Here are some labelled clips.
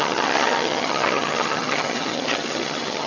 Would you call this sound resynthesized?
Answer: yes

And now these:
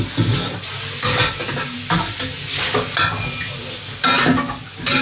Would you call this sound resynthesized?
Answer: no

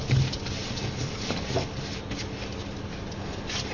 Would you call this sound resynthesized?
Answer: no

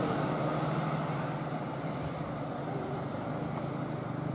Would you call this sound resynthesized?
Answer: no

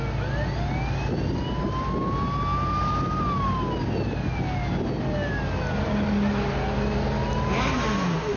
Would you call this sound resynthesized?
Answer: no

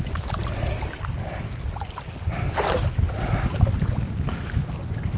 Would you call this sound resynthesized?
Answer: no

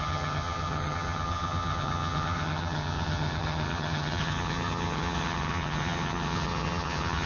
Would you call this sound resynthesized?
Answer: yes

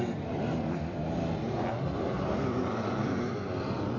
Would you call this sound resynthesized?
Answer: no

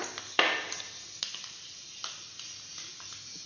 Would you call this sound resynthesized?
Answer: no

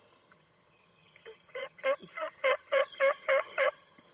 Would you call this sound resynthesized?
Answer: yes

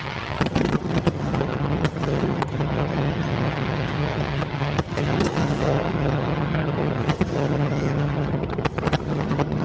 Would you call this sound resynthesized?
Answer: yes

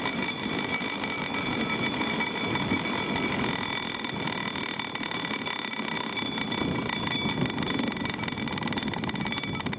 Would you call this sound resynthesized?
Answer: no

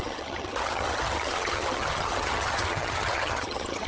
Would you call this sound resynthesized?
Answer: yes